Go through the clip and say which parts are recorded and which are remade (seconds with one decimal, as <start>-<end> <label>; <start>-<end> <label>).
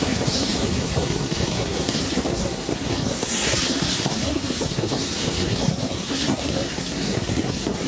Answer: 0.0-7.9 remade